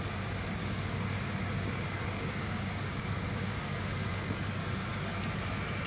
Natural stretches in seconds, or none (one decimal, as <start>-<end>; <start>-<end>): 0.0-0.6; 4.1-4.6; 5.3-5.9